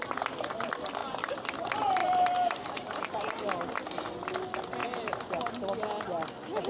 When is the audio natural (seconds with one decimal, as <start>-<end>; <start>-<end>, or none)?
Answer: 0.0-1.0; 1.6-2.0; 3.4-6.7